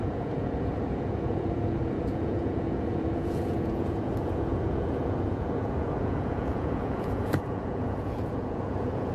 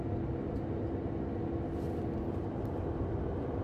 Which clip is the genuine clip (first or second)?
second